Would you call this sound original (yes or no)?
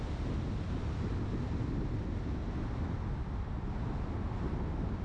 yes